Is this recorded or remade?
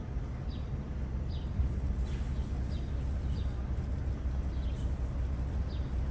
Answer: recorded